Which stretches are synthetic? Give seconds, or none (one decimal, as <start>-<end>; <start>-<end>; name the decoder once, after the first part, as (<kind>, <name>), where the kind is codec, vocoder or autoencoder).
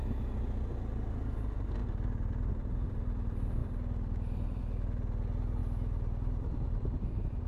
none